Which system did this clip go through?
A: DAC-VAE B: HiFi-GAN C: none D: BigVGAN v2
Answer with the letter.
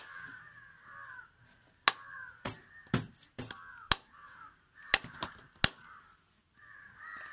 C